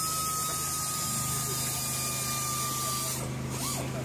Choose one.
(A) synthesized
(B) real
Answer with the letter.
B